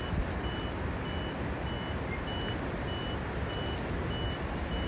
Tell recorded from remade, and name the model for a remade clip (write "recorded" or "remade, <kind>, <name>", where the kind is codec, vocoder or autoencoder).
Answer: recorded